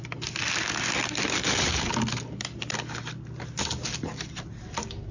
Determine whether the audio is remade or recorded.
recorded